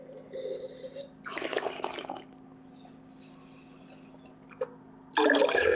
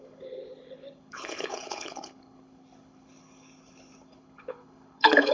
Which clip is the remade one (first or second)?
second